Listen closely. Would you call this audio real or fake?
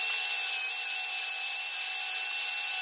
real